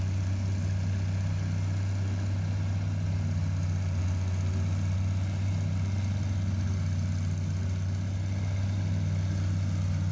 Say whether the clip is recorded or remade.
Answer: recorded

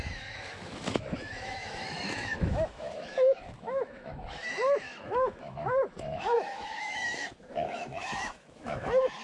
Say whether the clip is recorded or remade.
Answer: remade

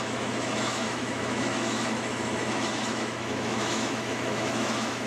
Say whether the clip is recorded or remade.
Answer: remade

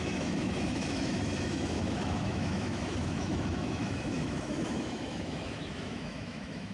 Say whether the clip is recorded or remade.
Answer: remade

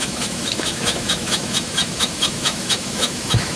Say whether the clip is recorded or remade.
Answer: remade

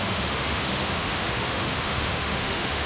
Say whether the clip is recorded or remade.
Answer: remade